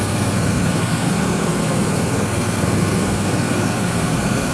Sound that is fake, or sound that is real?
fake